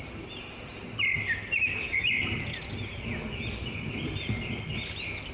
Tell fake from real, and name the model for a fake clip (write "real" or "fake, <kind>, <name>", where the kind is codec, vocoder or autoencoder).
real